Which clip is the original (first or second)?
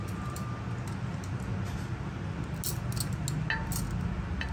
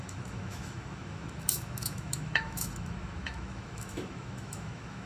first